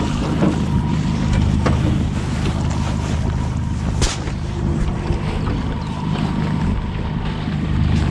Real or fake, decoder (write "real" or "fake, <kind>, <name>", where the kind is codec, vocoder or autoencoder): real